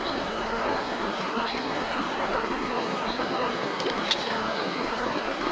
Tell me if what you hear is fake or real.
fake